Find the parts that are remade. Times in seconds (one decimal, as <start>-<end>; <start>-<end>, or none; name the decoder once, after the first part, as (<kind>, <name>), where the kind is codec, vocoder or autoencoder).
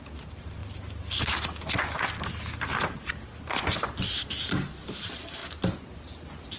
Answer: none